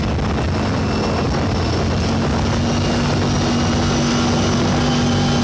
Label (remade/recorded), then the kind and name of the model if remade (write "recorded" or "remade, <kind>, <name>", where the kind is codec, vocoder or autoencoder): recorded